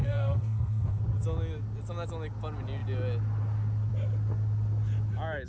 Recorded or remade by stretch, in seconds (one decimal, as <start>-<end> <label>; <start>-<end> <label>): 0.0-1.0 remade; 1.0-5.5 recorded